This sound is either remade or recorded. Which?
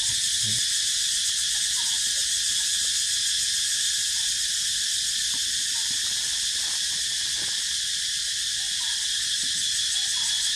recorded